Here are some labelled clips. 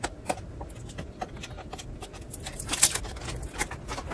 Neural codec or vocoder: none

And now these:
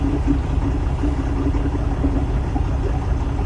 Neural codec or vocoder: none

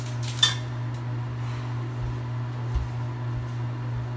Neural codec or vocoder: none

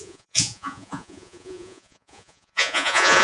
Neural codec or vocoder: vocoder, Vocos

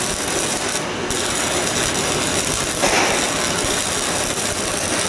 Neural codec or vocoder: none